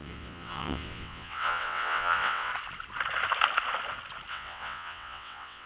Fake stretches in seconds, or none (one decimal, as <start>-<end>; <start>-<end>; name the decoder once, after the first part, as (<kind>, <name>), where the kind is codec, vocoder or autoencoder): 0.0-2.5 (vocoder, WaveNeXt); 4.3-5.7